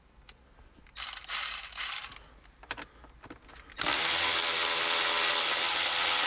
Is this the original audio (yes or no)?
yes